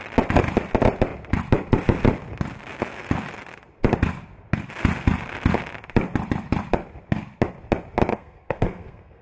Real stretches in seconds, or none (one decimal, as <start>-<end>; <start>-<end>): 0.0-8.1